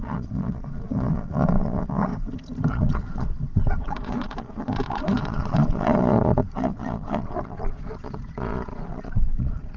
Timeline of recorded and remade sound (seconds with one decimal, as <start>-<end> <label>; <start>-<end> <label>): 0.0-2.1 remade; 2.1-2.7 recorded; 2.7-9.8 remade